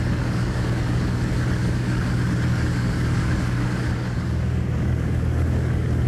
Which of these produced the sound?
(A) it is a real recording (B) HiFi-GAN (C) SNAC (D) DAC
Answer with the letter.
D